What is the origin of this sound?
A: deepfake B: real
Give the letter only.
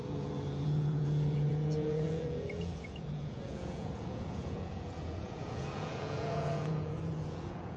A